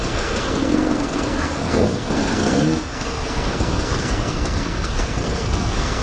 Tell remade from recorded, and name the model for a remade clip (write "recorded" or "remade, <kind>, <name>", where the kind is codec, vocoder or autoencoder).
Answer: remade, codec, SNAC